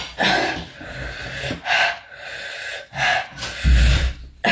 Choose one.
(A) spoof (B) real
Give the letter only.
B